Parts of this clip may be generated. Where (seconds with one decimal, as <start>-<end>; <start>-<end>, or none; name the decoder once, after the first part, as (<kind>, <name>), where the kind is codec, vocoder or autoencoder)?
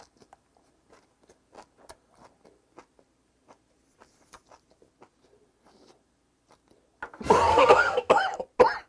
7.5-8.1 (codec, SNAC)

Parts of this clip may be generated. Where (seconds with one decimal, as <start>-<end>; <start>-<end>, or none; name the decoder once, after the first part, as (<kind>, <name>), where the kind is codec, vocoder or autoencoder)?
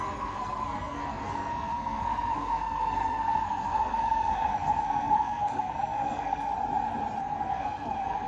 0.0-6.5 (codec, SNAC); 7.2-8.3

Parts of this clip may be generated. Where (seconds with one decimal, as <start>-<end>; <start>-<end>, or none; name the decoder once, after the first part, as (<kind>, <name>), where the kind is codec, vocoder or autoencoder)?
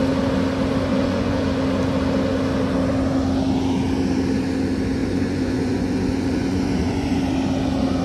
0.9-1.4 (vocoder, Vocos); 5.0-7.2